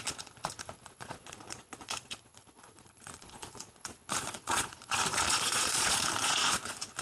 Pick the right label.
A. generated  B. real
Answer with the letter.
A